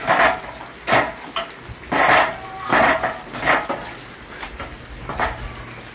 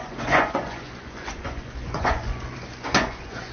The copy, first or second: second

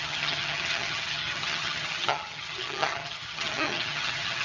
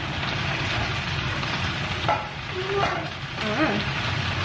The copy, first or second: first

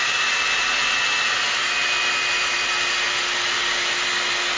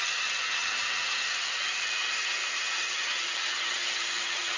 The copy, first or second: second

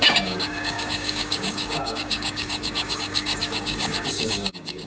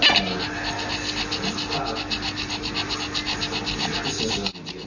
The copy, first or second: first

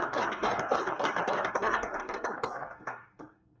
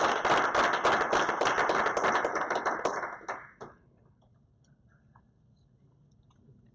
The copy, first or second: first